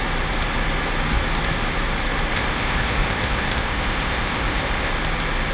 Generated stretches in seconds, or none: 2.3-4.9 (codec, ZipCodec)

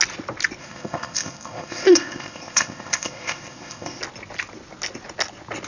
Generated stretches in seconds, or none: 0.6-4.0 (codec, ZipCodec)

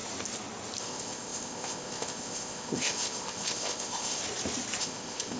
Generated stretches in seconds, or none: 0.8-4.2 (codec, ZipCodec); 4.8-5.4

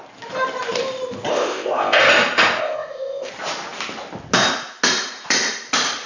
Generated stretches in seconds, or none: 1.3-2.0 (codec, ZipCodec); 2.6-3.3